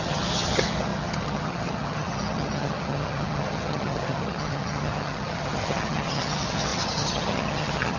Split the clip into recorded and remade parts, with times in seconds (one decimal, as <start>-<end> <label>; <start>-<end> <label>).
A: 0.0-8.0 remade